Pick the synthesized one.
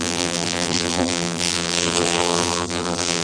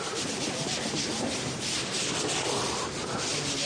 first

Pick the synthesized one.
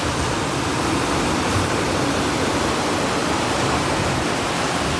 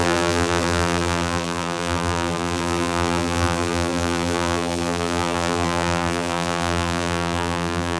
second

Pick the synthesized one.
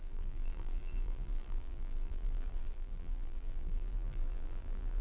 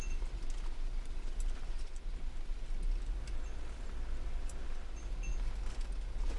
first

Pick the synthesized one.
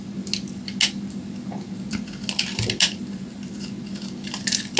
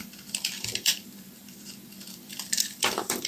second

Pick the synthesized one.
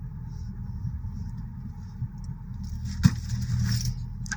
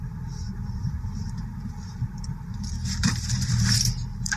second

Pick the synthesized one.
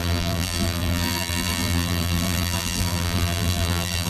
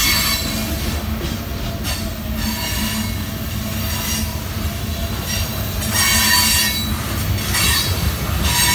first